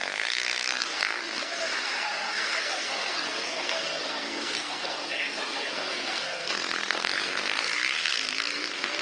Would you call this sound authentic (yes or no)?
no